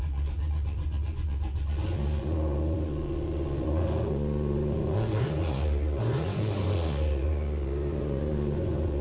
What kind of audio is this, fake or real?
fake